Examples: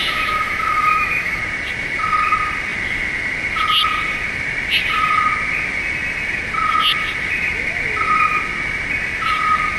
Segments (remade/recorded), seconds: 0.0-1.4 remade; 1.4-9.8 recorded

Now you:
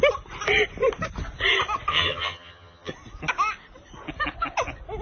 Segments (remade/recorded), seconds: 0.0-1.9 recorded; 1.9-2.9 remade; 2.9-5.0 recorded

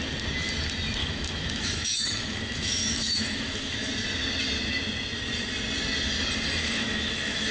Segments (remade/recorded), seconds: 0.0-1.0 recorded; 1.0-3.9 remade; 3.9-6.6 recorded; 6.6-7.5 remade

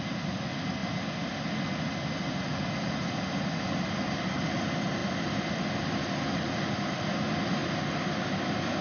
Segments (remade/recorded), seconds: 0.0-8.8 recorded

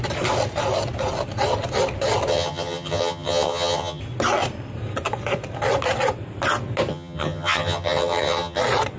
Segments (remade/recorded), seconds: 0.0-2.3 recorded; 2.3-4.0 remade; 4.0-6.9 recorded; 6.9-8.6 remade; 8.6-9.0 recorded

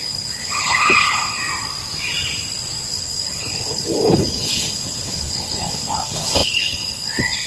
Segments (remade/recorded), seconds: 0.0-1.4 remade; 1.4-2.9 recorded; 2.9-7.5 remade